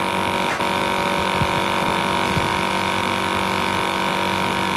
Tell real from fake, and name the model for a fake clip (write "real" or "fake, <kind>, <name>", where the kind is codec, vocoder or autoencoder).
real